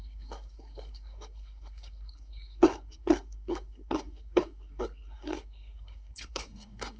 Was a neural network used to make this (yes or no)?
yes